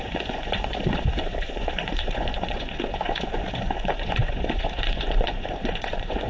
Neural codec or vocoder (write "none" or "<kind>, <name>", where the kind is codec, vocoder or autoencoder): vocoder, Vocos